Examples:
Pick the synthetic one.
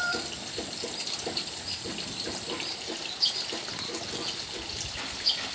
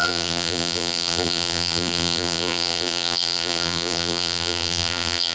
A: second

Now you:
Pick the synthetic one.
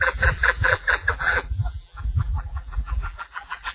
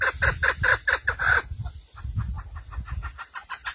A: first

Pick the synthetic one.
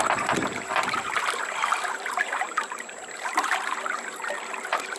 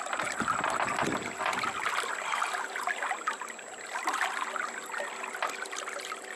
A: first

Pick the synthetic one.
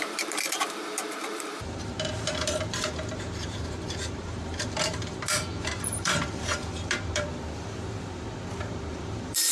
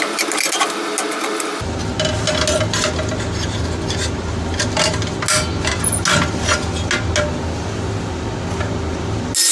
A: first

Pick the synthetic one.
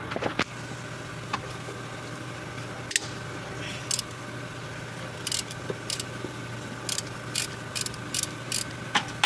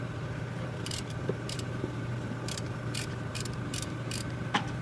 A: second